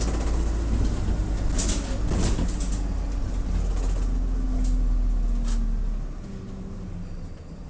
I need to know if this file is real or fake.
real